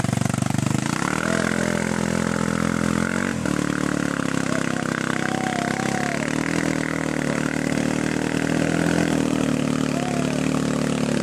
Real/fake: real